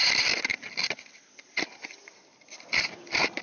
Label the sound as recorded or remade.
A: recorded